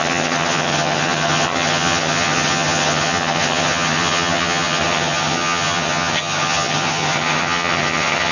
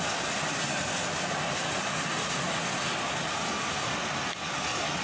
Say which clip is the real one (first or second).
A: second